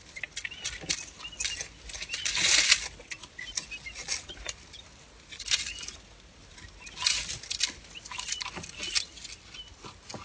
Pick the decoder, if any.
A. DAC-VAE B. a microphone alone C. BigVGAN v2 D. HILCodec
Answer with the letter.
B